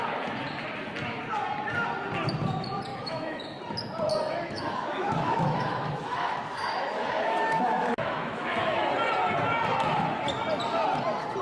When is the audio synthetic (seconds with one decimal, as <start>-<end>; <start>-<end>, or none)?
2.9-3.6; 4.1-8.9